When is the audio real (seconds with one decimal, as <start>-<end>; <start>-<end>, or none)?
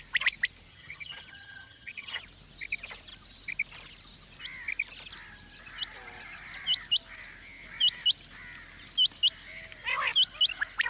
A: 0.0-0.7; 2.2-10.9